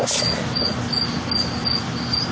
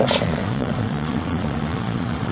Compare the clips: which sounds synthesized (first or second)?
second